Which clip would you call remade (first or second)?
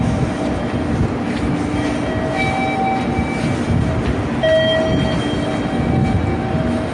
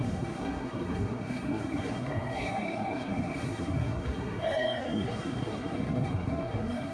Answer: second